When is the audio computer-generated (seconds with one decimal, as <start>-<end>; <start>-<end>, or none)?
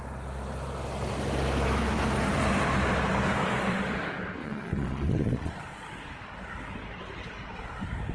4.4-5.5